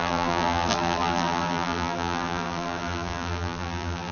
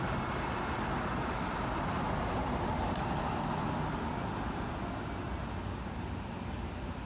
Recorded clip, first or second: second